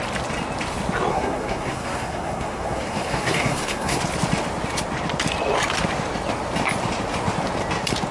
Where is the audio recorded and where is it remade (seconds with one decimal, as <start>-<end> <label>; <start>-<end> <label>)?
0.0-1.1 recorded; 1.1-4.0 remade; 4.0-8.1 recorded